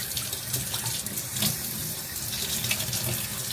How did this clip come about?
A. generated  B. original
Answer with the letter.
B